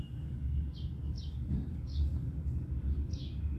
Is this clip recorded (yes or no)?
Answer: no